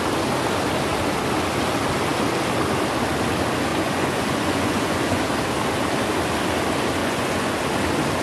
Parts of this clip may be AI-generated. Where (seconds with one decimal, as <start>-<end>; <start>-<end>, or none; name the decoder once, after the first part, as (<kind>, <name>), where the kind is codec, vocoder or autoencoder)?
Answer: 3.7-5.2 (vocoder, Vocos); 7.0-7.6